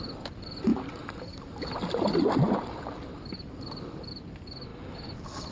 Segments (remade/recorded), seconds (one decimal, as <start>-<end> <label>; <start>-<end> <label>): 0.0-5.5 recorded